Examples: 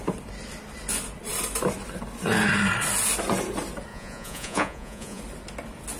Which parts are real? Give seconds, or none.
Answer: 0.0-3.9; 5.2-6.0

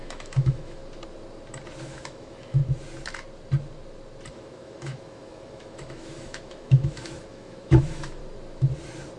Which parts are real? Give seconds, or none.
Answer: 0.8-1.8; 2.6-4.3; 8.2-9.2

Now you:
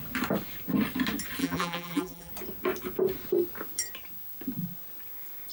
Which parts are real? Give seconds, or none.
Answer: 0.0-1.4; 2.3-5.5

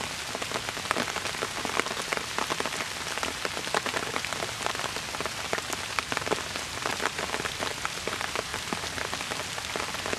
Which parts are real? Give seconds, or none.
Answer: 0.0-10.2